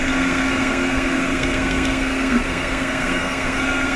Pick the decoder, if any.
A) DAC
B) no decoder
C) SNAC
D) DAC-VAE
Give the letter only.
C